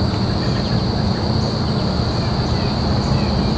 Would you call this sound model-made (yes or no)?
no